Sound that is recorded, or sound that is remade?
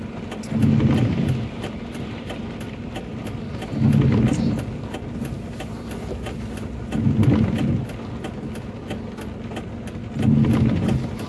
recorded